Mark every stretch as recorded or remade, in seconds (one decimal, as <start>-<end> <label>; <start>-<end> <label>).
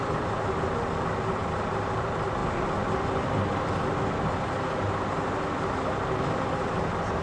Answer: 0.0-7.2 recorded